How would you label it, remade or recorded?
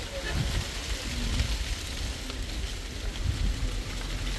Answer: recorded